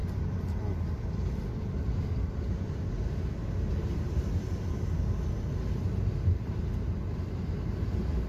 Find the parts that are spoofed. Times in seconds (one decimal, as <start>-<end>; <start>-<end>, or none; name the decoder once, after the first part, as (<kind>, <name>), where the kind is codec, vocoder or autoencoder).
none